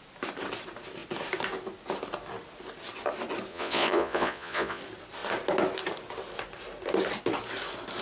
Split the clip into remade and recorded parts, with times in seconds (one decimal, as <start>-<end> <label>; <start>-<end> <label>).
0.0-3.5 recorded; 3.5-4.8 remade; 4.8-8.0 recorded